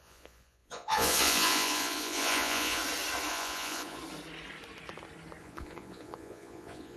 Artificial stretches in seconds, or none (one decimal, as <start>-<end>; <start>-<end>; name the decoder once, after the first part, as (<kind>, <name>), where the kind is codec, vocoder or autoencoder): 0.0-2.8 (vocoder, Vocos); 3.3-4.0; 5.4-7.0